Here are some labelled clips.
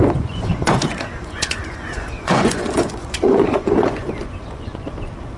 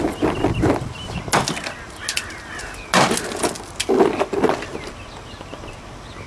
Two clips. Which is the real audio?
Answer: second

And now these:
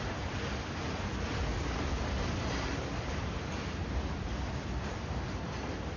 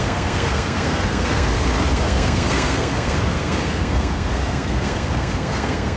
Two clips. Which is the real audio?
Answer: first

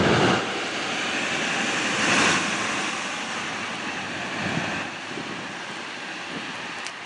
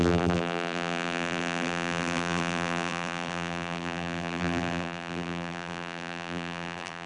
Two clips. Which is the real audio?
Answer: first